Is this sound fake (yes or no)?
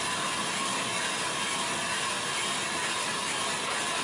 no